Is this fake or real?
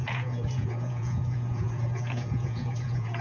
fake